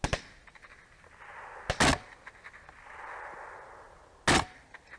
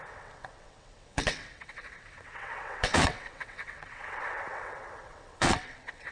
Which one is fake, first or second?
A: second